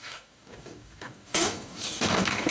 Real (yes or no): no